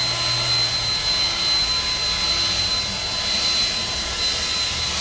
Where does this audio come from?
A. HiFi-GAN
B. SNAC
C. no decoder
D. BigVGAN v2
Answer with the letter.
C